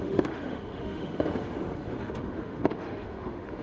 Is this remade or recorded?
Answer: remade